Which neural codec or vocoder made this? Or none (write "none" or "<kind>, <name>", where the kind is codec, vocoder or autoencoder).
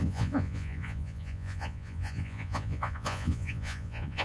vocoder, Vocos